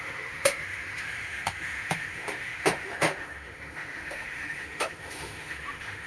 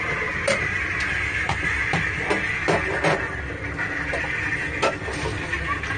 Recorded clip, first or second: second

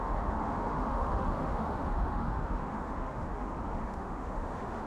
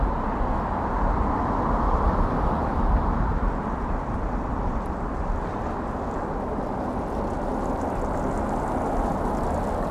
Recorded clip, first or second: second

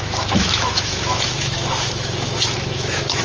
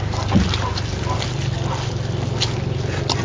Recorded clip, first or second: second